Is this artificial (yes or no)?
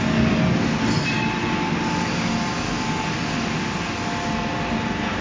no